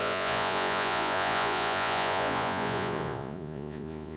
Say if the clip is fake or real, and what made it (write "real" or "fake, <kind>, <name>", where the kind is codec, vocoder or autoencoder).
fake, vocoder, Vocos